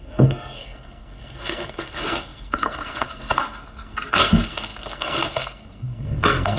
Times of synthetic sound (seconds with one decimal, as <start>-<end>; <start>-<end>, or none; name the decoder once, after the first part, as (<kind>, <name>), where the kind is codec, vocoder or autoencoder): 0.0-6.6 (codec, SNAC)